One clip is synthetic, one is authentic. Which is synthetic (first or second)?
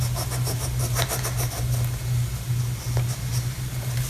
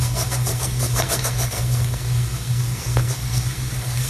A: second